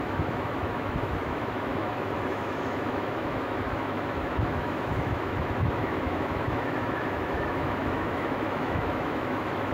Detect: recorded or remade remade